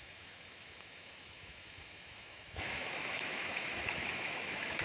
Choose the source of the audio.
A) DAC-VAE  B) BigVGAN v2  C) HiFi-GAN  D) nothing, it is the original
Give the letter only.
A